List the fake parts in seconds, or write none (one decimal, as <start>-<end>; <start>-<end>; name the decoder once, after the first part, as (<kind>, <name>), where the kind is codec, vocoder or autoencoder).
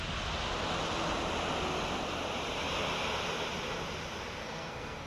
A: 4.4-5.1 (codec, SNAC)